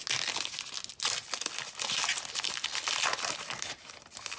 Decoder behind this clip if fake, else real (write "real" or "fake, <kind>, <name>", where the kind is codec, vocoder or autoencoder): real